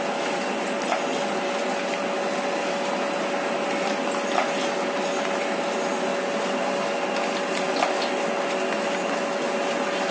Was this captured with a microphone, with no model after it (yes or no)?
yes